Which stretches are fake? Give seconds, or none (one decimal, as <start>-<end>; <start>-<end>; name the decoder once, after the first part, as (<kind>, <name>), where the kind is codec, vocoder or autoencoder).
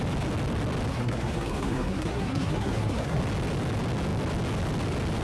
0.9-3.2 (codec, SNAC)